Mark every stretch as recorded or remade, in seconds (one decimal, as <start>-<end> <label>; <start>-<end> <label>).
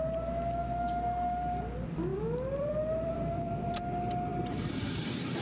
0.0-2.1 recorded; 2.1-3.7 remade; 3.7-4.3 recorded; 4.3-5.4 remade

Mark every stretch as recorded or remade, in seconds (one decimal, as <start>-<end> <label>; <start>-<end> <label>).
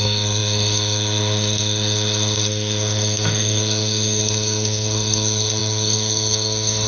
0.0-6.9 remade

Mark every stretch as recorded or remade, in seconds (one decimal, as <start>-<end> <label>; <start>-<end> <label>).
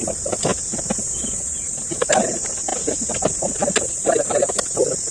0.0-5.1 recorded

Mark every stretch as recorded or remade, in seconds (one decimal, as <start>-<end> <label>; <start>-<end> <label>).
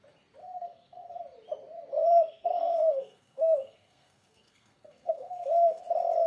0.0-0.4 recorded; 0.4-1.2 remade; 1.2-2.0 recorded; 2.0-5.8 remade; 5.8-6.3 recorded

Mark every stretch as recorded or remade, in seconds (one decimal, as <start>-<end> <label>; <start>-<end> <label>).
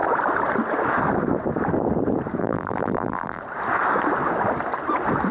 0.0-2.4 recorded; 2.4-3.4 remade; 3.4-5.3 recorded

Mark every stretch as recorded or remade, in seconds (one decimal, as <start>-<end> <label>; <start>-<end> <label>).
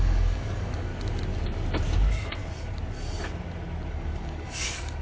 0.0-0.9 remade; 0.9-3.9 recorded; 3.9-5.0 remade